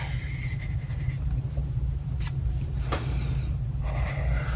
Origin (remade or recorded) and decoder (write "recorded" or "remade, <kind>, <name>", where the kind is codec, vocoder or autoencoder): remade, vocoder, BigVGAN v2